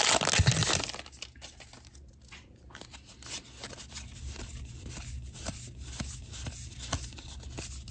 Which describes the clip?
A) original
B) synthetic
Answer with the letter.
A